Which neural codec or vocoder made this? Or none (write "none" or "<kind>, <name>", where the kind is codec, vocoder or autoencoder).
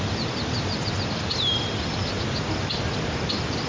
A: none